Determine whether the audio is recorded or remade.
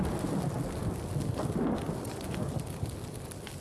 recorded